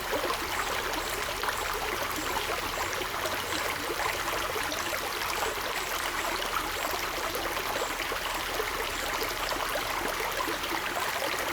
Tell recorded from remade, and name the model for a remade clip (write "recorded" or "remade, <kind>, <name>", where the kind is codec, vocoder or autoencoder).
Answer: recorded